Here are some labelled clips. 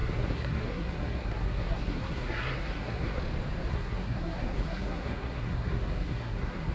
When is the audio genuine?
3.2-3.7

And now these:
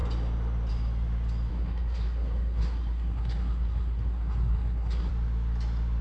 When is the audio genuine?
0.0-1.5; 5.1-6.0

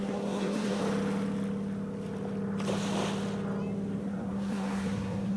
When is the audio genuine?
0.8-4.0